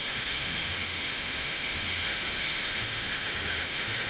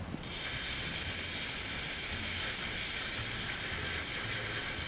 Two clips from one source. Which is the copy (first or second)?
first